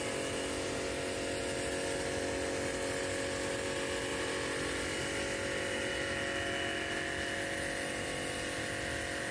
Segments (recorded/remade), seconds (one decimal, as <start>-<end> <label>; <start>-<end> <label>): 0.0-4.1 recorded; 4.1-5.0 remade; 5.0-9.3 recorded